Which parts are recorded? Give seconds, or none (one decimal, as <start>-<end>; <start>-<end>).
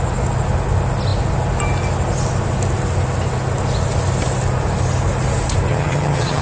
0.0-5.7